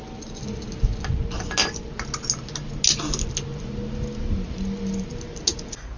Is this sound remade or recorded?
recorded